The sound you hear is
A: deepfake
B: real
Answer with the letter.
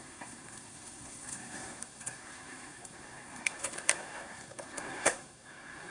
A